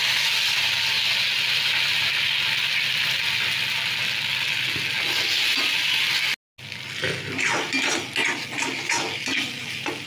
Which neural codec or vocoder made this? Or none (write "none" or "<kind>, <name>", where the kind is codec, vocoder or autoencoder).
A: none